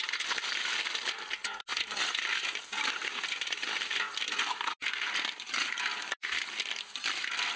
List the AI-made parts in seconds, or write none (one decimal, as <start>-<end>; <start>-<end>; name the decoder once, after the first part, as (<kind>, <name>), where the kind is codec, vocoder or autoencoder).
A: none